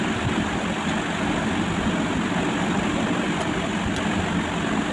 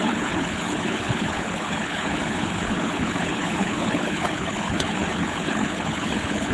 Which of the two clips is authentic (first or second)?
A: first